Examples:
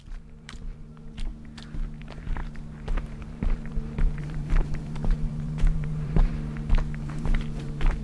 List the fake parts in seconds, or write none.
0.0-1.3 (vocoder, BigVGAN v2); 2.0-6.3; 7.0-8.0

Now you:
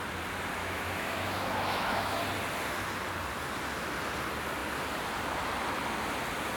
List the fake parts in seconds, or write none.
0.6-2.2 (autoencoder, DAC-VAE)

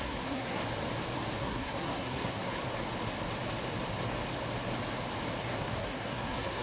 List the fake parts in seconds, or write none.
0.0-0.6 (codec, SNAC); 1.4-2.6; 5.4-6.6

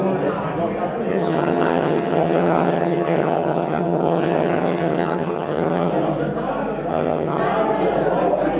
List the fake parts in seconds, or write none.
1.1-5.9 (vocoder, HiFi-GAN); 6.9-7.4

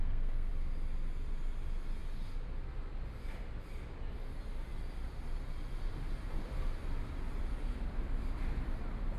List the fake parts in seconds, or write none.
0.0-0.5 (codec, SNAC)

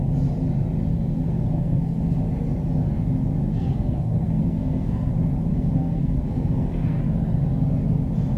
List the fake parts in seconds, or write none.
0.9-2.0 (codec, SNAC); 3.5-5.1; 5.5-7.0

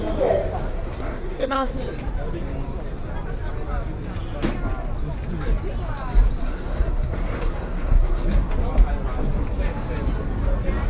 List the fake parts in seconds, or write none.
0.7-1.7 (codec, SNAC); 6.4-8.5